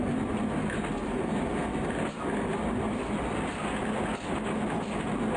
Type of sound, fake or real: real